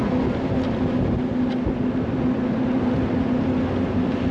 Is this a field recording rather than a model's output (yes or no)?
yes